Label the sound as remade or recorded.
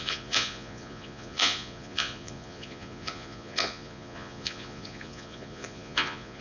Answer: remade